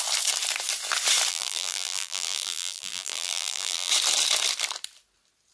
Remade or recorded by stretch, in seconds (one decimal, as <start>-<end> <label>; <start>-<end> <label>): 0.0-1.3 recorded; 1.3-3.9 remade; 3.9-5.5 recorded